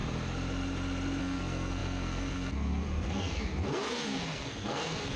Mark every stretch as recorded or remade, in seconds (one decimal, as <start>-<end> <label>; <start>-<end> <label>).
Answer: 0.0-1.2 recorded; 1.2-5.2 remade